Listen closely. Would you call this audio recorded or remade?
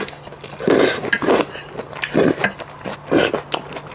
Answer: recorded